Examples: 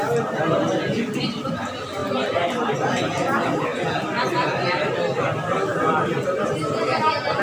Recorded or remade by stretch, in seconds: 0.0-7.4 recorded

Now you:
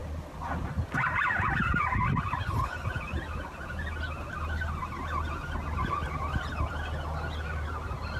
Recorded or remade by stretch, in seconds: 0.0-8.2 recorded

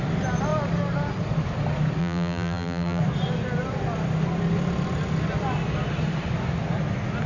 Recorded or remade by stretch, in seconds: 0.0-2.0 recorded; 2.0-3.0 remade; 3.0-7.3 recorded

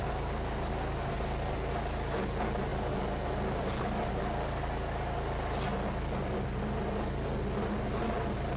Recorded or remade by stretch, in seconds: 0.0-8.6 recorded